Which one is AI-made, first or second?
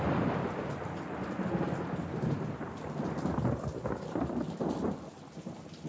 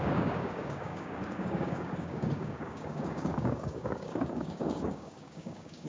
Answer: second